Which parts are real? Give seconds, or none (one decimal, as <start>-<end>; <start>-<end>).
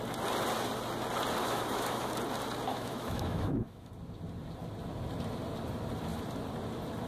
0.0-1.4; 2.1-2.7; 3.9-7.1